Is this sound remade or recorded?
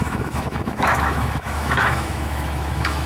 remade